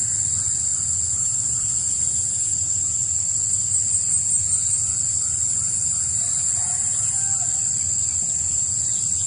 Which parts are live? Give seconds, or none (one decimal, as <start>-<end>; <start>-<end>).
0.0-9.3

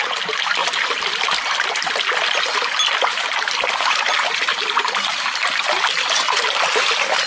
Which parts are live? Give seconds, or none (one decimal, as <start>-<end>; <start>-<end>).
0.0-7.3

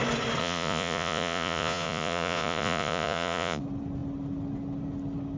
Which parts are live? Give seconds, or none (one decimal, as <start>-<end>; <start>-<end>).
0.0-0.4; 3.6-5.4

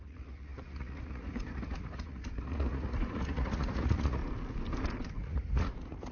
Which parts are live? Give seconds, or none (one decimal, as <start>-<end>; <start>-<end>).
4.2-5.2

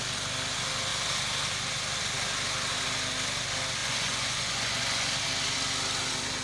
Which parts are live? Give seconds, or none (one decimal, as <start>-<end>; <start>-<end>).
0.0-3.8; 5.1-6.4

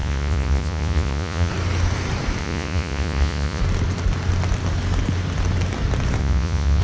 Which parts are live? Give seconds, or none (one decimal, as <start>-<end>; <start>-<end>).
1.5-2.4; 3.6-6.2